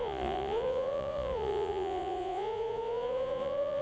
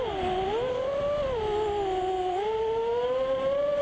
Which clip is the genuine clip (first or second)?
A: second